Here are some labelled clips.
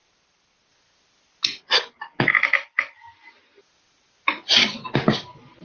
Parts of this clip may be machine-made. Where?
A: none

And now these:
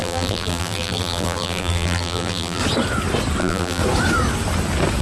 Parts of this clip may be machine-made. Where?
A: 0.0-2.6 (vocoder, BigVGAN v2); 3.4-3.8

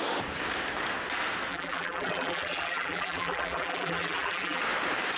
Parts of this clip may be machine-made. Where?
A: 1.5-4.6 (vocoder, BigVGAN v2)

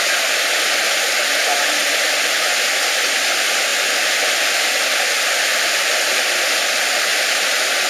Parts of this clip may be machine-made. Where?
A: 5.5-6.2 (vocoder, BigVGAN v2); 7.1-7.9

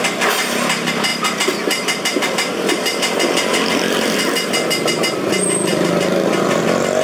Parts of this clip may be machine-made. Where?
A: none

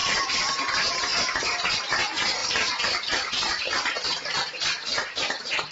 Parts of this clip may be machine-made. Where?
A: 0.0-0.6 (vocoder, BigVGAN v2); 2.4-5.7

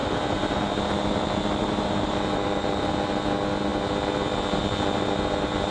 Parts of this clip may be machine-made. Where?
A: 0.0-2.9 (vocoder, BigVGAN v2)

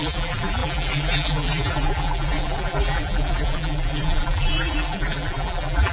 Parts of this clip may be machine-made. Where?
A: 0.0-5.9 (vocoder, BigVGAN v2)